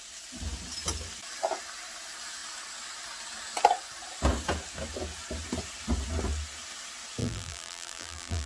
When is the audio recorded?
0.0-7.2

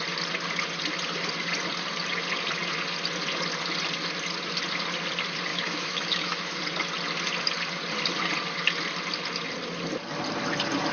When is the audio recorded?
0.0-5.5; 6.6-10.9

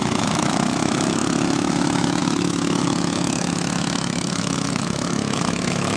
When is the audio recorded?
none

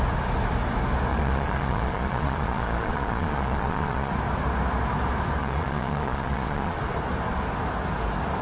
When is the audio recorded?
0.0-1.1; 4.1-5.4; 6.8-8.4

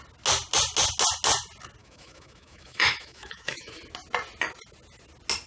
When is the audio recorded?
0.0-1.8; 3.8-5.5

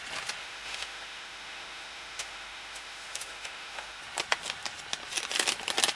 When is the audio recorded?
0.0-0.4; 4.0-6.0

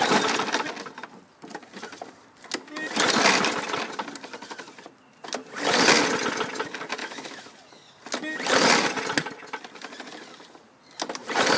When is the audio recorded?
0.0-7.0; 7.5-11.6